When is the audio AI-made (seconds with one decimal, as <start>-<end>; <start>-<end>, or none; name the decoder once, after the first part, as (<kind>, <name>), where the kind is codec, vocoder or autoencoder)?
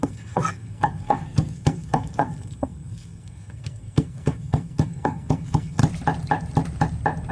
0.0-5.8 (codec, SNAC)